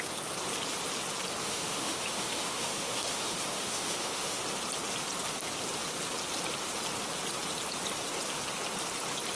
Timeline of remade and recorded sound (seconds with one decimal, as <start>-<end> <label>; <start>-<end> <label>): 0.0-1.4 recorded; 1.4-4.4 remade; 4.4-9.4 recorded